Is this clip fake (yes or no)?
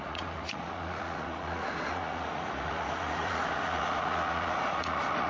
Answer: yes